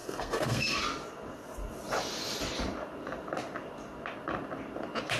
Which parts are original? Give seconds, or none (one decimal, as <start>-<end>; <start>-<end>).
0.8-5.2